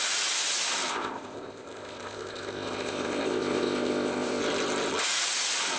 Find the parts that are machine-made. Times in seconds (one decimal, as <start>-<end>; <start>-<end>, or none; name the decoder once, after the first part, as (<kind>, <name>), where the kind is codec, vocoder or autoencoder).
0.9-4.4 (codec, ZipCodec)